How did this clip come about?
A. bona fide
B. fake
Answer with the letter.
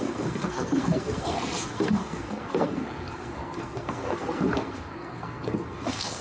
B